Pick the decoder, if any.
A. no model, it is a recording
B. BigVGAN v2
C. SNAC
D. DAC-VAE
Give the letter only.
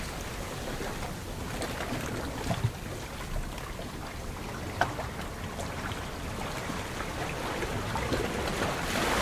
A